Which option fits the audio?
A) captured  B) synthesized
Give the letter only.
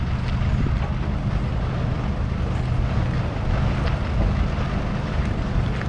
A